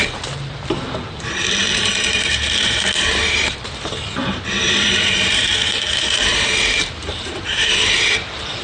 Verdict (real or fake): fake